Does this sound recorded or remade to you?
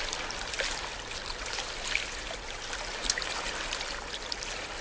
recorded